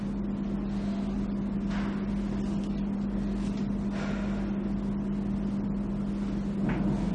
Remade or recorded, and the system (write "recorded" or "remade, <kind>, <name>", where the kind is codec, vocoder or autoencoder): recorded